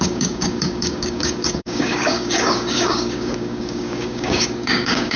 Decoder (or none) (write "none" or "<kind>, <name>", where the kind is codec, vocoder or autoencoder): codec, DAC